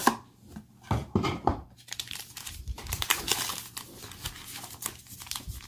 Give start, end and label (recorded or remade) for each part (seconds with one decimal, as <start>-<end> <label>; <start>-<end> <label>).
0.0-1.0 recorded; 1.0-3.2 remade; 3.2-5.7 recorded